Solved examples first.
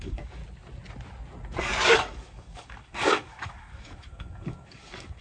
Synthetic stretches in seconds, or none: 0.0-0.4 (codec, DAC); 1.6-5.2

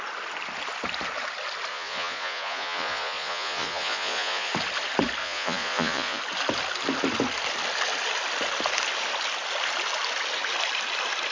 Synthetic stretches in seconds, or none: 1.7-4.5 (vocoder, Vocos); 5.2-6.2

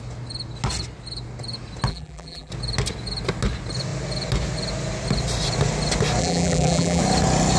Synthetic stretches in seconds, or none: 1.9-2.5 (vocoder, BigVGAN v2); 6.2-7.0